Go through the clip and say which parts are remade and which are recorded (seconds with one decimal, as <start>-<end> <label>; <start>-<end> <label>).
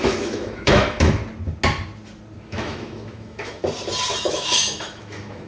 0.0-1.2 remade; 1.2-2.4 recorded; 2.4-3.6 remade; 3.6-4.2 recorded; 4.2-5.5 remade